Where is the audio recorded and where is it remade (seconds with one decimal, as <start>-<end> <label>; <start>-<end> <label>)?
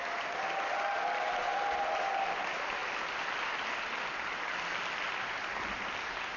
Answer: 0.0-6.4 recorded